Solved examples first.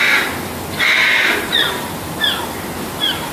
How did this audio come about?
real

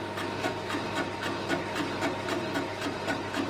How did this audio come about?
real